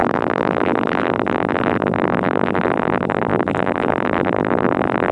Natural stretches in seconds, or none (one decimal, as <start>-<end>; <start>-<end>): none